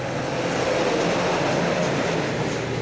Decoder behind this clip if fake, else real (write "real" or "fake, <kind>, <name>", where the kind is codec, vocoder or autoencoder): real